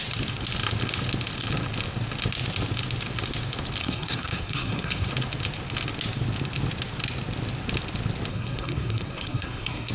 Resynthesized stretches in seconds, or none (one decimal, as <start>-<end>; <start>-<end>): 3.8-5.1; 8.3-9.9